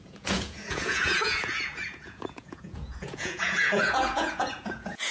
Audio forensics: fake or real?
fake